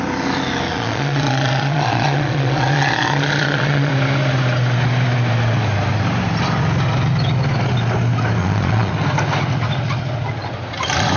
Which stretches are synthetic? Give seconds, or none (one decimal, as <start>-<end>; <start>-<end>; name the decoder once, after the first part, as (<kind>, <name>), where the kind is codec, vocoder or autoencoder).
0.7-3.9 (vocoder, Vocos); 8.4-8.9